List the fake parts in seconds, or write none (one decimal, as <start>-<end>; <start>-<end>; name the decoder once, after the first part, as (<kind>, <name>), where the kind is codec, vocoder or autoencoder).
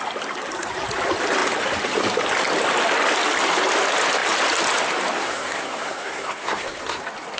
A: 5.2-7.0 (codec, SNAC)